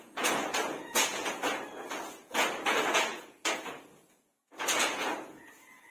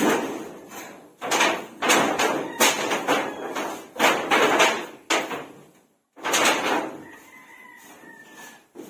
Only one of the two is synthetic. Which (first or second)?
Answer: first